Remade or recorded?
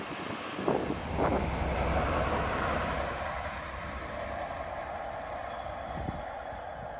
recorded